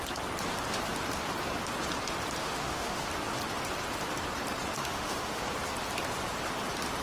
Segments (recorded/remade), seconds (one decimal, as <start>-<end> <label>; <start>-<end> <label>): 0.0-2.4 recorded; 2.4-3.1 remade; 3.1-4.8 recorded; 4.8-5.4 remade; 5.4-7.0 recorded